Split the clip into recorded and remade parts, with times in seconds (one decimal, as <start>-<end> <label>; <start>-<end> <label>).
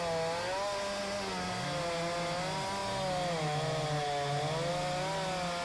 0.0-5.6 recorded